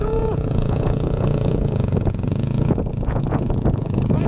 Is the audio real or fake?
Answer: fake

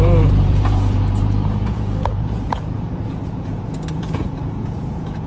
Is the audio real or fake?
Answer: fake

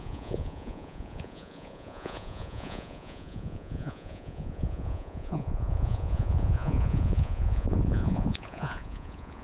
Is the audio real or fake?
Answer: fake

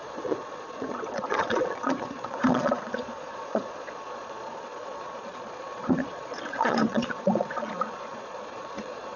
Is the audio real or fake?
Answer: fake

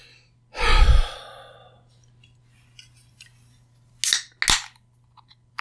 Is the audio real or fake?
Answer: real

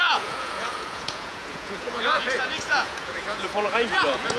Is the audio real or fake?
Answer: fake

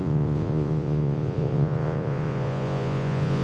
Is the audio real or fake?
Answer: fake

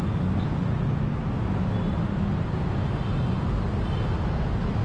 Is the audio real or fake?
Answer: real